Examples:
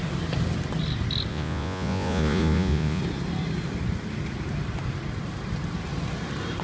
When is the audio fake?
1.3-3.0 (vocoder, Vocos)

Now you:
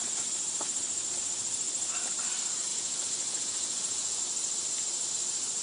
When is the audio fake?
2.7-4.2 (vocoder, Vocos)

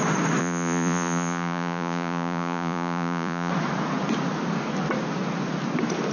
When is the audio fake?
0.4-3.5 (vocoder, Vocos)

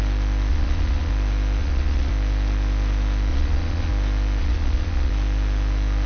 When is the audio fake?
0.5-1.1 (vocoder, Vocos); 1.6-2.1; 3.3-3.9; 4.4-5.1